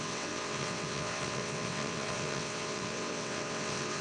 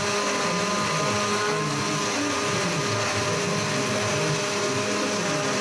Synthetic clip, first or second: first